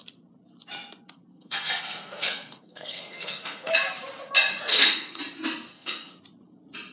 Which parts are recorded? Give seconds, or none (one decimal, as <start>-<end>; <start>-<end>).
0.0-1.3; 3.7-4.7; 5.2-5.7; 6.2-6.9